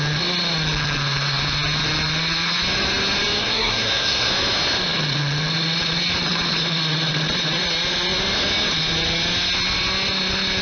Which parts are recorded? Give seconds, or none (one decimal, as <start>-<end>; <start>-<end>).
0.0-3.4; 4.3-10.6